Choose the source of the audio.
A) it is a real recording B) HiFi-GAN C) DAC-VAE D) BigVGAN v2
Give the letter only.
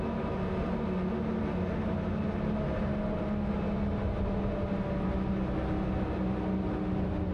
A